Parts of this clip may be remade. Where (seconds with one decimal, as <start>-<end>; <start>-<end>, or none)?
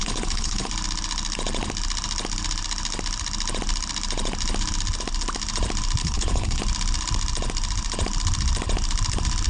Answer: 0.0-0.7; 6.0-6.6